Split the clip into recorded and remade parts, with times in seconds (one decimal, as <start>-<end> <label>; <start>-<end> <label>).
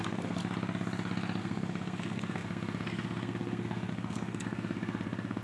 0.0-0.4 remade; 0.4-1.4 recorded; 1.4-5.4 remade